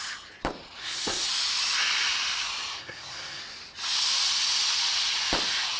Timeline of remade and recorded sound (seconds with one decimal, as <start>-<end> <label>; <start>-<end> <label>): 0.0-0.8 recorded; 0.8-1.3 remade; 1.3-2.8 recorded; 2.8-3.4 remade; 3.4-5.8 recorded